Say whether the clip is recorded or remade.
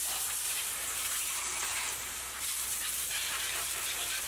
remade